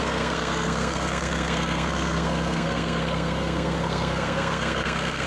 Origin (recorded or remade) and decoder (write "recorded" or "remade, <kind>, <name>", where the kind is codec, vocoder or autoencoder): remade, codec, SNAC